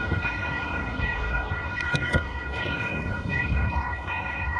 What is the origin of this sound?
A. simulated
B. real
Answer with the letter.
A